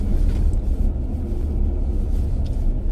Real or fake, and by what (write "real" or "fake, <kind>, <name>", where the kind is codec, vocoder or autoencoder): real